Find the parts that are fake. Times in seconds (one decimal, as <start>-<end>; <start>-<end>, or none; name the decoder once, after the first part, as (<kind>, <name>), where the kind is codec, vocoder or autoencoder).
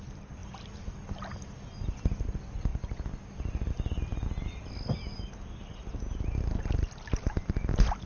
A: none